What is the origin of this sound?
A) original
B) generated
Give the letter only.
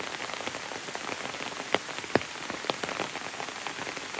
A